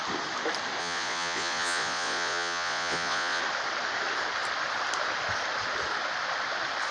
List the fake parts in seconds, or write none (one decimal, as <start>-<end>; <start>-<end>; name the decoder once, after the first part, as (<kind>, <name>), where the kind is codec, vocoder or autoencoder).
0.8-3.4 (vocoder, Vocos)